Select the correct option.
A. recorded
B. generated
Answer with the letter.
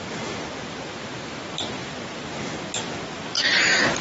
A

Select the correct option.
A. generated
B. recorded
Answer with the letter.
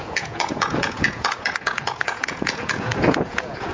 A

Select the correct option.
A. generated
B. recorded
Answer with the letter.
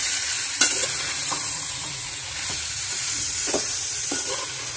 A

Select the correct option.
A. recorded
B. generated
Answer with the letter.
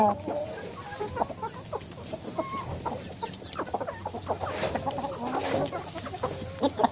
A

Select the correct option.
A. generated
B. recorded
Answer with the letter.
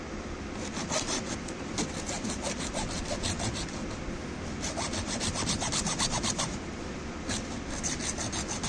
B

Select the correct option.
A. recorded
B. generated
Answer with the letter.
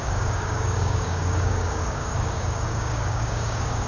B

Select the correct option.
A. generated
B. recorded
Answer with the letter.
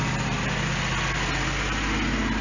B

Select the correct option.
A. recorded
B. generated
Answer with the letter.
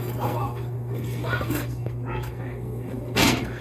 B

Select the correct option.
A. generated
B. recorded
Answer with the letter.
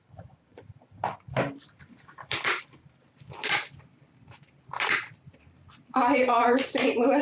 A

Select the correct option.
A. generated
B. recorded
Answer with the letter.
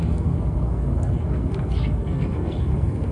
A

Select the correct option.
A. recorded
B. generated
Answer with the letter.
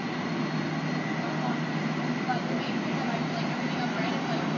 A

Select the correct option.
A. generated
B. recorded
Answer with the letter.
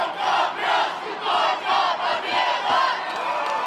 B